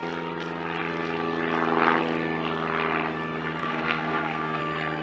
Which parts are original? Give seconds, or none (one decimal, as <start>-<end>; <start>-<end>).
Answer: 0.0-3.6; 4.6-5.0